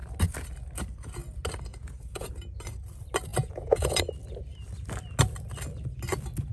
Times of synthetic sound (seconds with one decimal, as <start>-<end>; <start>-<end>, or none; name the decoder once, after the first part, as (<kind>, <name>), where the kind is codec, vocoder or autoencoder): 1.7-2.3 (vocoder, Vocos); 3.3-4.0